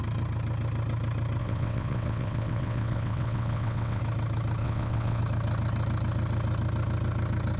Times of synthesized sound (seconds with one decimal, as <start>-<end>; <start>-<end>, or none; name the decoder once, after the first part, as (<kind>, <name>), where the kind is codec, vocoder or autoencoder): 1.4-4.0 (vocoder, WaveNeXt); 4.6-5.2